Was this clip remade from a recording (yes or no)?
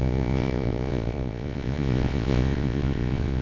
yes